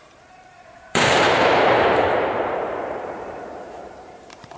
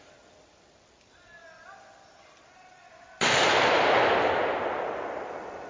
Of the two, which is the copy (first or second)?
first